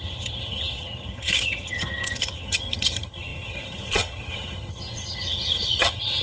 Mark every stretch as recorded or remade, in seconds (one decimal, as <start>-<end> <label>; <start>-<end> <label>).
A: 0.0-6.2 remade